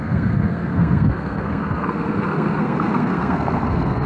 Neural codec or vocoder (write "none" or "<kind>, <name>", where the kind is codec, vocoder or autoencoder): codec, SNAC